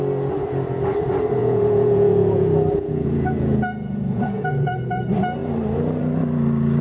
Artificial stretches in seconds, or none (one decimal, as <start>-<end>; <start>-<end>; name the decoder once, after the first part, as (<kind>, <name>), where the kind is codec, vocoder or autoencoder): 1.4-5.0 (vocoder, Vocos)